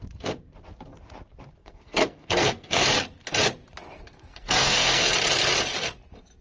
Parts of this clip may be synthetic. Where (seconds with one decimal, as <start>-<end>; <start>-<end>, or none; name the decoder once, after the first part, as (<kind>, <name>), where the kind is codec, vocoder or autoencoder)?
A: 1.6-2.9 (codec, SNAC); 3.9-5.1